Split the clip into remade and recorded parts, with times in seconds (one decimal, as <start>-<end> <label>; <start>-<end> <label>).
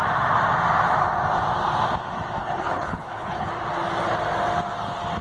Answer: 0.0-2.4 recorded; 2.4-3.5 remade; 3.5-5.2 recorded